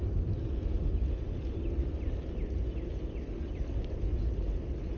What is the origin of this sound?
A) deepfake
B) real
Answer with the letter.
B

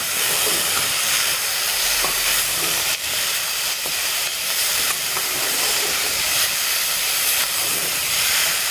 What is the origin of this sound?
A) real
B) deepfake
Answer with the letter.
B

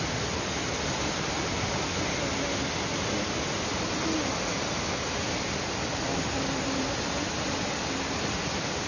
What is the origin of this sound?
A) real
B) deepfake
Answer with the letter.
A